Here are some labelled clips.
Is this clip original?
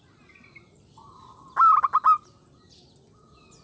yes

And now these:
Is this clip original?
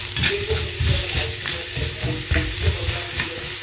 yes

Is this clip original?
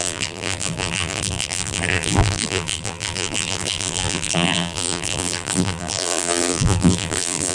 no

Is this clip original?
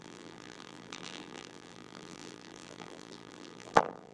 no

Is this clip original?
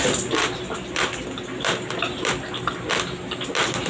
yes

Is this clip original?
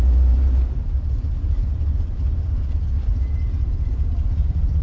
no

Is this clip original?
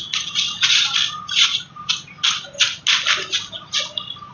yes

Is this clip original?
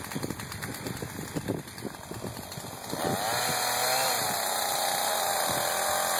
yes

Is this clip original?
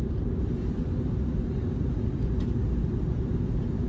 yes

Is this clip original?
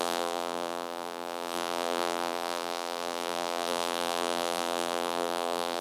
no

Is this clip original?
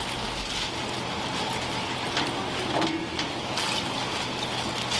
yes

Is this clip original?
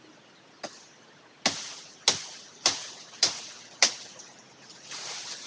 yes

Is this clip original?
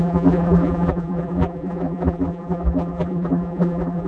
no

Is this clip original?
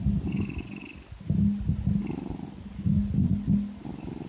yes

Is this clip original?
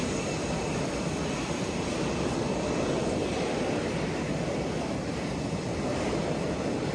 yes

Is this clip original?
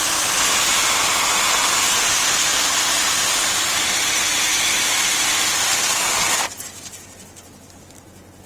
yes